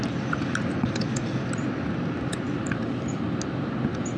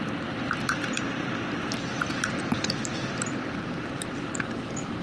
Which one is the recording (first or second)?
first